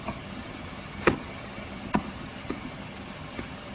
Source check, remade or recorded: remade